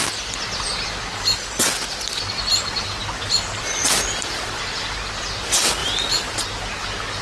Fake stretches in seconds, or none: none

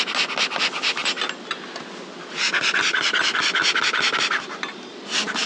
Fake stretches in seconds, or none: none